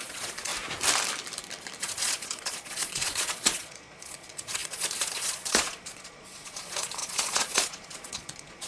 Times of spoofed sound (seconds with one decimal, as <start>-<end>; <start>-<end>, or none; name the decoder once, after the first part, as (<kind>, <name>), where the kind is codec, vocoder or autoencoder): 0.0-0.5 (vocoder, Vocos); 1.8-8.7